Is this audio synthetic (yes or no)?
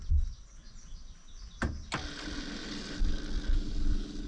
no